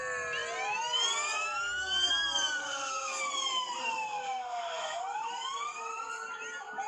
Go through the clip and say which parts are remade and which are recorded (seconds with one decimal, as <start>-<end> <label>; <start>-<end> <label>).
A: 0.0-2.6 recorded; 2.6-3.2 remade; 3.2-3.8 recorded; 3.8-5.0 remade; 5.0-6.9 recorded